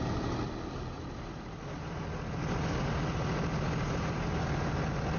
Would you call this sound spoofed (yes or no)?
no